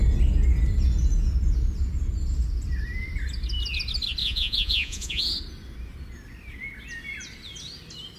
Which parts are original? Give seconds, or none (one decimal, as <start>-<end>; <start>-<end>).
0.0-4.2; 5.2-8.2